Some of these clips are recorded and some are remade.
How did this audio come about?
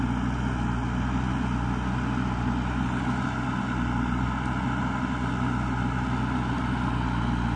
recorded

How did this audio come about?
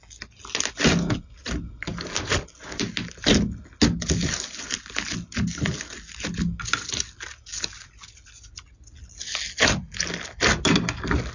recorded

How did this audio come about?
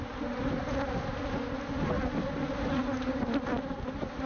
recorded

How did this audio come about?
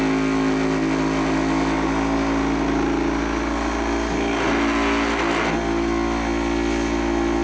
recorded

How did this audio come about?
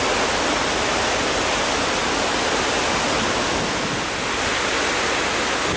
recorded